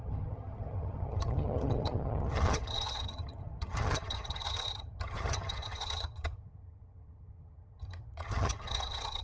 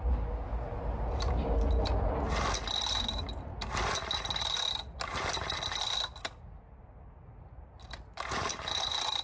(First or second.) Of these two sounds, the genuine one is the second